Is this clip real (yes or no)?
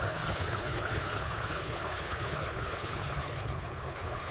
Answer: no